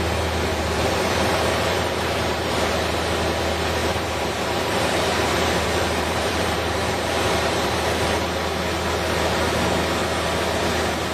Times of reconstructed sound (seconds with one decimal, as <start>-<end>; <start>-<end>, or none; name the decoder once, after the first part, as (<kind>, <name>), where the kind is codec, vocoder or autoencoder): 0.5-2.7 (vocoder, BigVGAN v2); 3.8-7.7